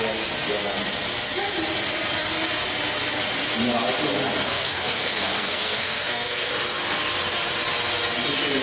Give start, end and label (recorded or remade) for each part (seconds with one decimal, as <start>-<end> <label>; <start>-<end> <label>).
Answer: 0.0-4.5 recorded; 4.5-6.5 remade; 6.5-8.6 recorded